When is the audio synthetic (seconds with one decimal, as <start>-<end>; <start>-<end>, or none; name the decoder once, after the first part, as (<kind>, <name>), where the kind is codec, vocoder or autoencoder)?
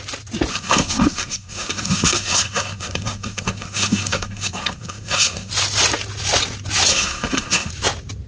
0.5-5.5 (codec, SNAC); 6.9-7.7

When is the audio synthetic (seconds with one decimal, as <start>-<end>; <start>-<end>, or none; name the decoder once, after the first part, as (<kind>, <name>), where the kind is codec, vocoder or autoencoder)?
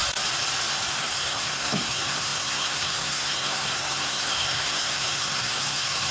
1.0-6.1 (codec, SNAC)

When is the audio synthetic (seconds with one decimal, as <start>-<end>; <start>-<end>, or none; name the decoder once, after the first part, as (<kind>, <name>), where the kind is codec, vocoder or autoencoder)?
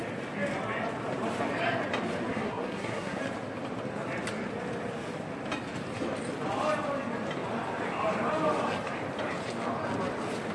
2.3-3.2 (codec, SNAC)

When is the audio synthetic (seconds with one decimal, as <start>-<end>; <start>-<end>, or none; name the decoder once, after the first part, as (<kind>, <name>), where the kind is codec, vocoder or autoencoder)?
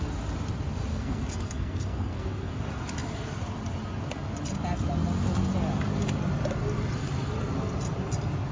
0.9-2.5 (codec, SNAC)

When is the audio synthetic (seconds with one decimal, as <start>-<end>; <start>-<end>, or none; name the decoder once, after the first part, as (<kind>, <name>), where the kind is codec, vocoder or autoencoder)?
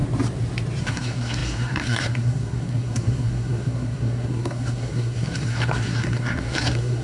0.8-7.0 (codec, SNAC)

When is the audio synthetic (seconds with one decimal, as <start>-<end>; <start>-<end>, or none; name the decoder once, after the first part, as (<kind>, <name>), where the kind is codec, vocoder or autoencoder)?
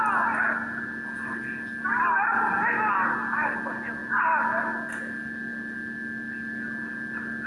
none